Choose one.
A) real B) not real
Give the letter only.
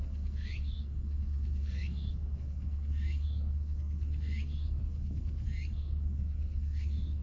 B